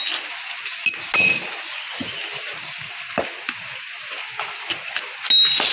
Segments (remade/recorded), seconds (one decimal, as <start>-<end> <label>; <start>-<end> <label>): 0.0-5.7 recorded